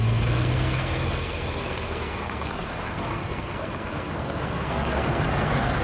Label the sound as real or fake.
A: fake